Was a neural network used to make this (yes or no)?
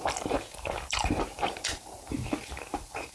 yes